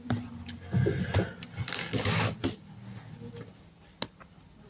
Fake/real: real